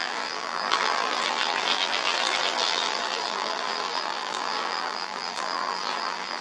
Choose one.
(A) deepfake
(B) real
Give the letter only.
A